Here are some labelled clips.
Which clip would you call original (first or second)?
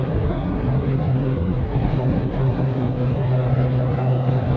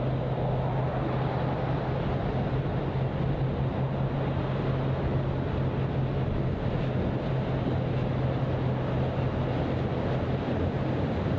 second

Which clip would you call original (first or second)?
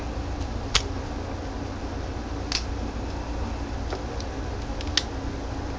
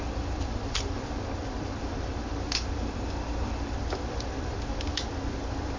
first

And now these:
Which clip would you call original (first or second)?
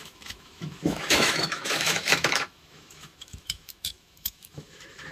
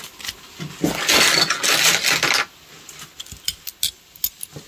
second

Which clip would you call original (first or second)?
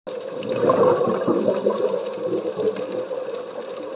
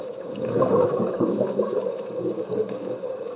first